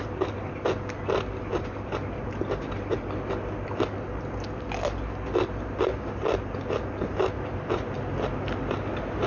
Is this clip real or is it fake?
real